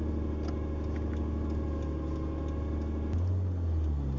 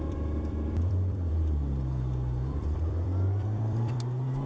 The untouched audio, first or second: first